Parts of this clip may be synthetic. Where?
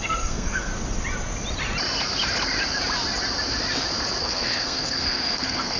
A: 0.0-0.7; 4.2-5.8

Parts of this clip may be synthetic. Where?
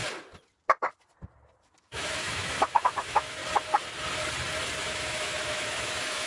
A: 1.8-3.4; 4.8-6.3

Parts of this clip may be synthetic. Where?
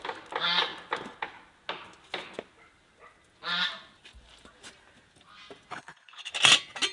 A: 5.7-6.3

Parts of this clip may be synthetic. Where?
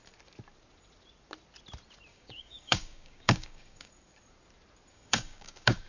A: 2.1-3.9; 4.9-5.9